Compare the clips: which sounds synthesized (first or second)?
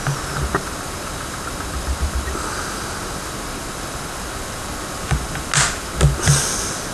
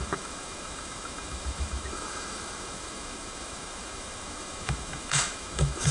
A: second